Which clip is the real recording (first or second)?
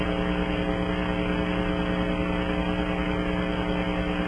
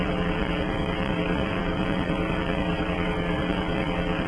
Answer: first